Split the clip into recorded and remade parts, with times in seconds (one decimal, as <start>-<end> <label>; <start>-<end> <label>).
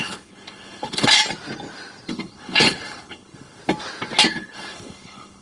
0.0-1.2 remade; 1.2-2.1 recorded; 2.1-3.6 remade; 3.6-4.3 recorded; 4.3-5.4 remade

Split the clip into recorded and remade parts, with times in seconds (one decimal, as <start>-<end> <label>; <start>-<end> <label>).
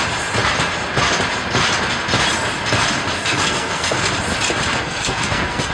0.0-3.2 recorded; 3.2-4.1 remade; 4.1-4.7 recorded; 4.7-5.7 remade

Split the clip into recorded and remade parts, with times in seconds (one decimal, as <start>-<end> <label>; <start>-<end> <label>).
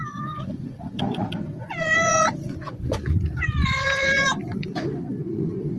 0.0-5.8 remade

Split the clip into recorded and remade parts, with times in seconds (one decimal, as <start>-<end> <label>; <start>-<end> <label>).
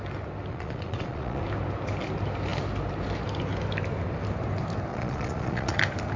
0.0-0.5 recorded; 0.5-1.4 remade; 1.4-4.9 recorded; 4.9-5.8 remade; 5.8-6.2 recorded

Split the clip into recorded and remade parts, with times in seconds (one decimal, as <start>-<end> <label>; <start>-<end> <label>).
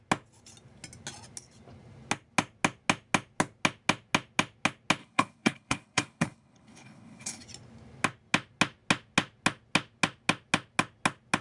0.0-5.0 recorded; 5.0-7.4 remade; 7.4-11.4 recorded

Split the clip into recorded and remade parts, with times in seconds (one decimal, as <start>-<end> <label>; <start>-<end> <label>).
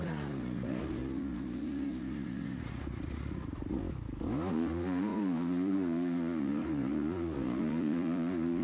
0.0-3.8 remade; 3.8-4.5 recorded; 4.5-8.6 remade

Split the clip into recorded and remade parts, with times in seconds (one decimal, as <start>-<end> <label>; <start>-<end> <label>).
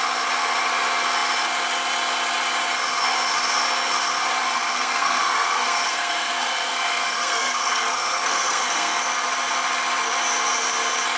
0.0-4.4 recorded; 4.4-9.0 remade; 9.0-11.2 recorded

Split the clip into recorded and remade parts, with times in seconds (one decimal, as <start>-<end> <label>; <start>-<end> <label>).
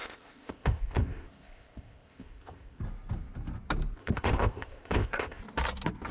0.0-2.8 remade; 2.8-4.0 recorded; 4.0-5.4 remade; 5.4-6.1 recorded